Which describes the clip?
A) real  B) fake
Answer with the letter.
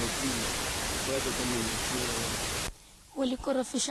B